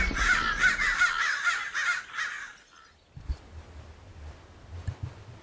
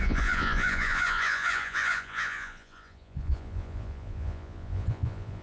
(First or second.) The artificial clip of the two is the second